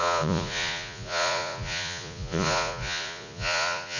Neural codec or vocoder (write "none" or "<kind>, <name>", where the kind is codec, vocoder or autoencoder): vocoder, Vocos